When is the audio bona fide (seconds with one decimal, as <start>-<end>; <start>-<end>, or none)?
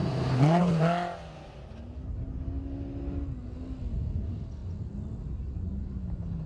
0.6-6.5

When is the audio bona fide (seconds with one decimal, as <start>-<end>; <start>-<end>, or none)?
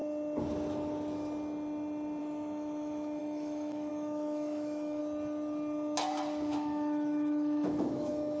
0.0-2.2; 5.0-6.5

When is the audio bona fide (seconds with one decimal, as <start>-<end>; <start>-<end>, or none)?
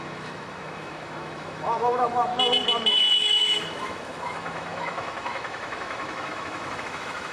2.3-2.9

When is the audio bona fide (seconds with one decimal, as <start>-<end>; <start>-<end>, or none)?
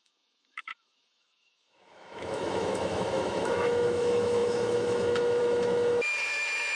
none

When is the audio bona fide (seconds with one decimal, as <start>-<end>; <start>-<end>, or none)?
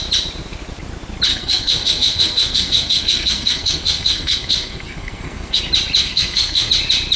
0.0-1.3; 5.6-6.0; 6.7-7.2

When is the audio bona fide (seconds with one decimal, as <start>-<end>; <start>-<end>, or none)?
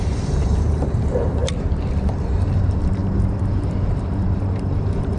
1.4-2.3; 3.0-3.9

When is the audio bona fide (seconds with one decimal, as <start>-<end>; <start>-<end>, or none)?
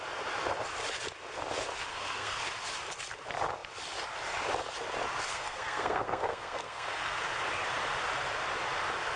0.0-1.9; 2.4-5.3; 7.2-9.2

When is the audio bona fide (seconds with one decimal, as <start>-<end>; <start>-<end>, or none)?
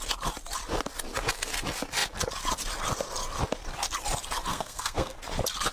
0.0-4.5; 5.2-5.7